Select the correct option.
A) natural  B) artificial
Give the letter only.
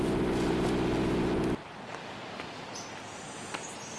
A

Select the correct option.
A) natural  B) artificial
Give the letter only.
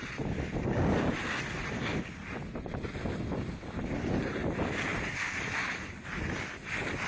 A